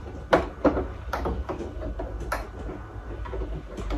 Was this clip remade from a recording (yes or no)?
no